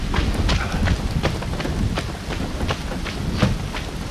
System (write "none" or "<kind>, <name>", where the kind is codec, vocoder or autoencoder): none